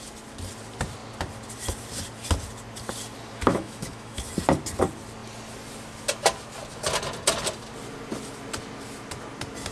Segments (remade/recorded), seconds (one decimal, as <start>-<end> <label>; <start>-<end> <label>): 0.0-3.5 recorded; 3.5-4.2 remade; 4.2-9.7 recorded